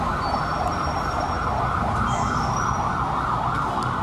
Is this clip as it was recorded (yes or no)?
yes